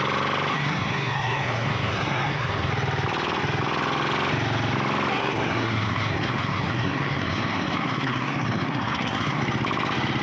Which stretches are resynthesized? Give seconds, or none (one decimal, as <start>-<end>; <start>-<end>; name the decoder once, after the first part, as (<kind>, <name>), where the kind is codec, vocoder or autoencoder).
0.5-2.7 (codec, SNAC); 5.1-9.4